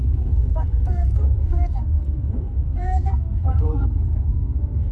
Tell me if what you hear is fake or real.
fake